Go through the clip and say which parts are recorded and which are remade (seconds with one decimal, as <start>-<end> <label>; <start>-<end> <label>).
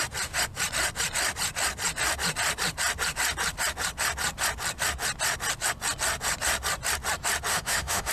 0.0-7.5 recorded; 7.5-8.1 remade